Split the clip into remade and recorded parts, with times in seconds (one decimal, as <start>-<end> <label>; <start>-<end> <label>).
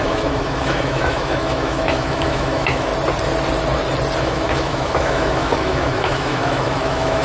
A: 0.0-2.9 remade; 2.9-4.2 recorded; 4.2-7.2 remade